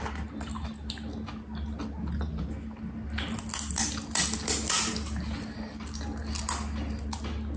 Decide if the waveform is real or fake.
real